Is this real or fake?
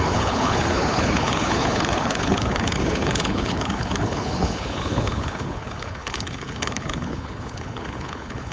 fake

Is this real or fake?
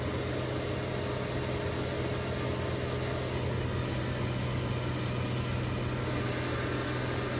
real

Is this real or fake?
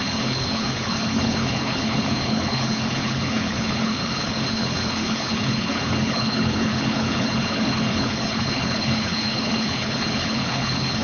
fake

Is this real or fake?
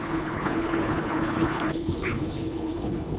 fake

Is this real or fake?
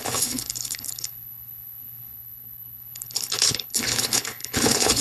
fake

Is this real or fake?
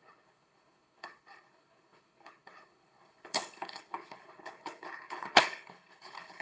fake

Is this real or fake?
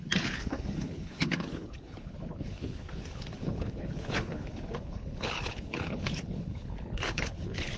fake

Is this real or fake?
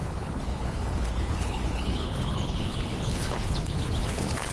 fake